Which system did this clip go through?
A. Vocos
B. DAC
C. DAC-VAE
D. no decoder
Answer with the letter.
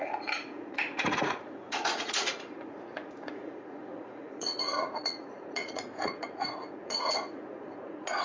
A